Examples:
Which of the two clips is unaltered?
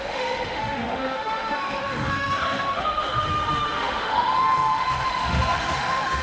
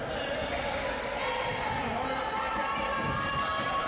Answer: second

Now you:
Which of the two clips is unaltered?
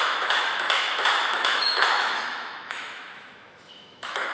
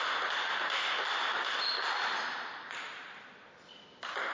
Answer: second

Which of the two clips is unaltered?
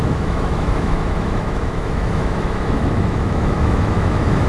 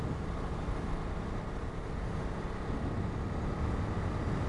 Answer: second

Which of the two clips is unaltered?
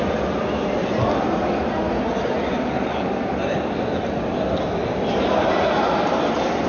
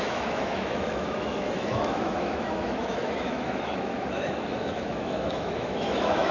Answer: first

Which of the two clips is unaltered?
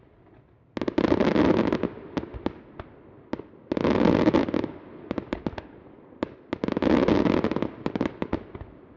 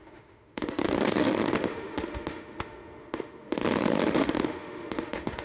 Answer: first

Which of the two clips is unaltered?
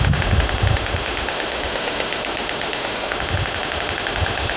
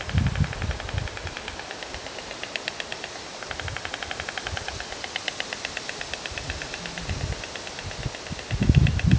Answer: second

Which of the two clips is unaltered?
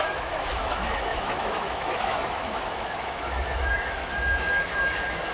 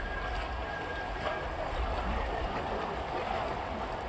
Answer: second